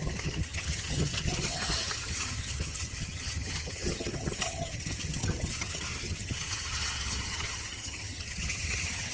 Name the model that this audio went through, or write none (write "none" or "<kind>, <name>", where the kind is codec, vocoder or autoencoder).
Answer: vocoder, HiFi-GAN